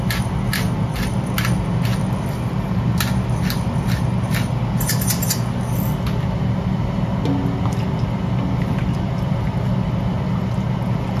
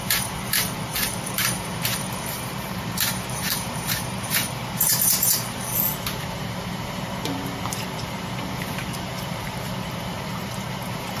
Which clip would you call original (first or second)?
first